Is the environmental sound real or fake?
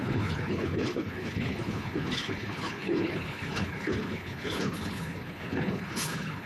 fake